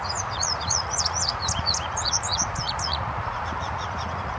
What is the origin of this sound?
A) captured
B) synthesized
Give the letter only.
B